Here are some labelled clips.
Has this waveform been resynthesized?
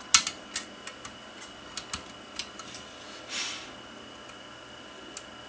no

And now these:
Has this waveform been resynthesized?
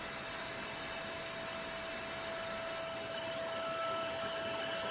no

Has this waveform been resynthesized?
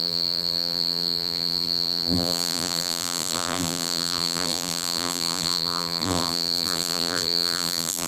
yes